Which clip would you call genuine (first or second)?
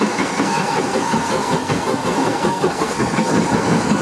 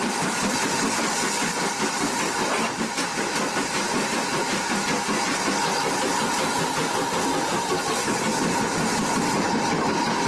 second